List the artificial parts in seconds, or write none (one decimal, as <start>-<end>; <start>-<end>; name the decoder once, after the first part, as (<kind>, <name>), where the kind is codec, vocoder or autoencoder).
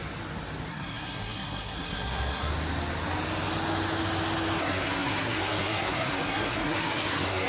0.7-2.5 (codec, SNAC); 4.6-7.5